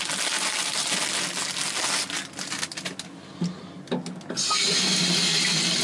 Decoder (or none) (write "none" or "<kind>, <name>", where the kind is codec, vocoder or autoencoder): none